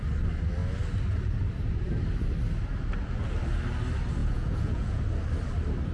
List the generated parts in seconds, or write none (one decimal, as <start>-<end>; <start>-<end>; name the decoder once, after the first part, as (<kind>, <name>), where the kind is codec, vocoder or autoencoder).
4.2-5.0 (vocoder, Vocos)

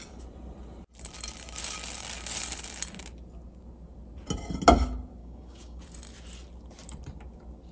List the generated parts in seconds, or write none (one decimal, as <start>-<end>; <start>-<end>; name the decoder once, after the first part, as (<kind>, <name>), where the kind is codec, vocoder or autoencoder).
5.2-5.8 (codec, DAC)